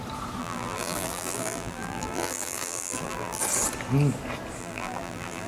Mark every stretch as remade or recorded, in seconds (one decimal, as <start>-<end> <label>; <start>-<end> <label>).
0.0-0.4 recorded; 0.4-3.4 remade; 3.4-4.6 recorded; 4.6-5.5 remade